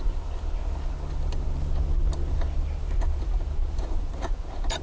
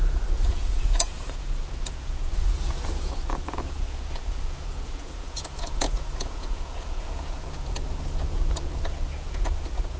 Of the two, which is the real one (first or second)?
first